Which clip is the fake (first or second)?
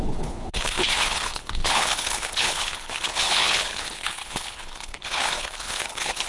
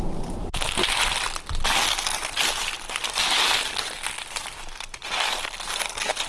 first